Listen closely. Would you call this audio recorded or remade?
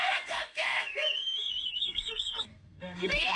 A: remade